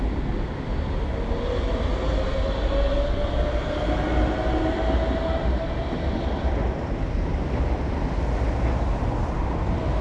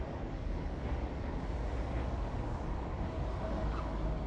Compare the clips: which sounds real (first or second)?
first